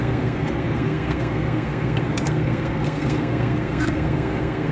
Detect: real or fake fake